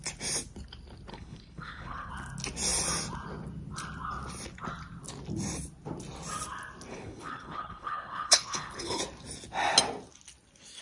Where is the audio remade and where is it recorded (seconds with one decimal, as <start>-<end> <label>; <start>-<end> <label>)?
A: 0.0-1.1 recorded; 1.1-2.1 remade; 2.1-6.9 recorded; 6.9-9.0 remade; 9.0-10.8 recorded